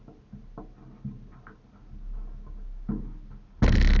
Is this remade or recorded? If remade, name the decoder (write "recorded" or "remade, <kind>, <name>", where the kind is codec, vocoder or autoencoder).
recorded